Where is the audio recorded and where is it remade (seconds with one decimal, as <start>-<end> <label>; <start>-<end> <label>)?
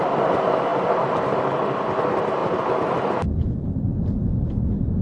0.0-5.0 recorded